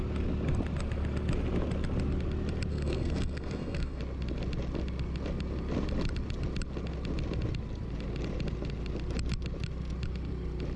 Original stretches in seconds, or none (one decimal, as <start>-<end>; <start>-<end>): 0.0-2.7; 4.0-10.8